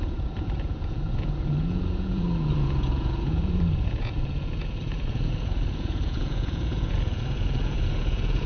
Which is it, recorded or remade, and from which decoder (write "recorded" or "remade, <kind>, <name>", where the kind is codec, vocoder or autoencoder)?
remade, vocoder, Vocos